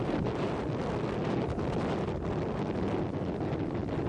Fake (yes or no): no